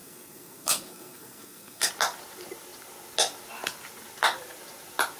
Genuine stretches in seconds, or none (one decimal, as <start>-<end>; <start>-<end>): 1.9-5.2